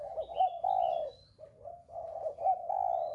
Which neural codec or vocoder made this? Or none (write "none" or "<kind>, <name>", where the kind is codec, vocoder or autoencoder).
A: none